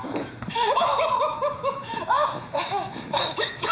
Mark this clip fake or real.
fake